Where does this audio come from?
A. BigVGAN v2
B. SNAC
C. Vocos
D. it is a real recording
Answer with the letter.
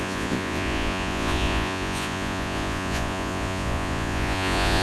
C